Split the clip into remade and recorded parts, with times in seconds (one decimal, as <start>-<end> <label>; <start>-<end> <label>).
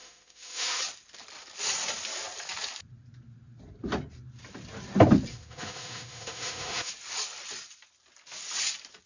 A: 0.0-0.8 remade; 0.8-5.3 recorded; 5.3-6.9 remade; 6.9-9.1 recorded